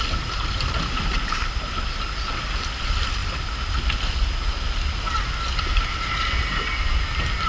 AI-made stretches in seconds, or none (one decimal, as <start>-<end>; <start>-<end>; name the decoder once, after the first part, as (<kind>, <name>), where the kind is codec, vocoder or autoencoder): none